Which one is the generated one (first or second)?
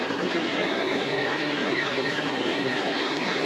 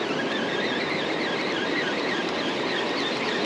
first